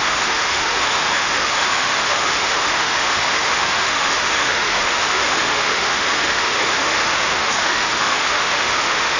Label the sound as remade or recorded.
remade